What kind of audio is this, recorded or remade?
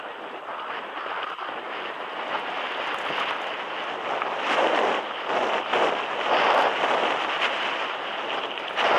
recorded